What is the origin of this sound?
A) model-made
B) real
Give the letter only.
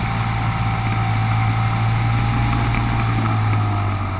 B